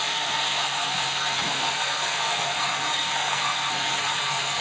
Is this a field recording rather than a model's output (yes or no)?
no